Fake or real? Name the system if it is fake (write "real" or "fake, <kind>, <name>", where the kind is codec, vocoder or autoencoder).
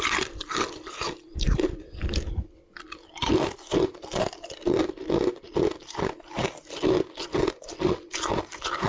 real